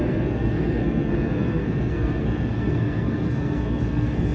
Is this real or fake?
fake